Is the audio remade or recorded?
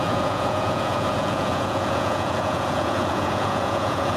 remade